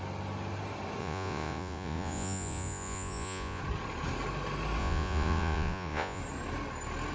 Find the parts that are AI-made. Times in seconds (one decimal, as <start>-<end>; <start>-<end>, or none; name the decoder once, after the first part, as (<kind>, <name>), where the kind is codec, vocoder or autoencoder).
1.0-3.6 (vocoder, Vocos); 4.8-6.2